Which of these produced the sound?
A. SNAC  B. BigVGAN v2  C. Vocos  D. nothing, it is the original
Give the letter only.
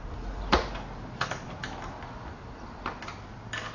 D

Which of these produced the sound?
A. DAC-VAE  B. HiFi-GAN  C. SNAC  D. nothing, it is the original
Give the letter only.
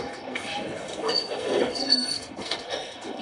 C